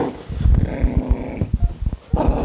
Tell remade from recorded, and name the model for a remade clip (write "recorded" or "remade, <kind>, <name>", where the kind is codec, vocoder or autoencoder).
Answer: recorded